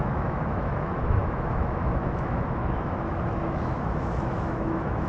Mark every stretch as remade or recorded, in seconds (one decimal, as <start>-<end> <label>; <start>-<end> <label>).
0.0-5.1 remade